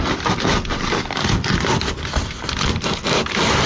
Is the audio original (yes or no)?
yes